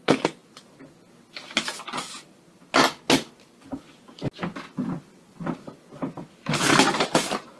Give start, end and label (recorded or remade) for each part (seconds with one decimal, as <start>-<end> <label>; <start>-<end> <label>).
0.0-7.6 recorded